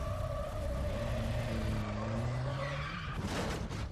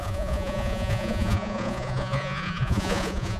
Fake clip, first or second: second